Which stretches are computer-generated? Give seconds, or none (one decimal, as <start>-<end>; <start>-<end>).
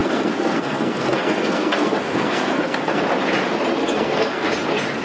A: 0.0-3.0; 3.8-4.5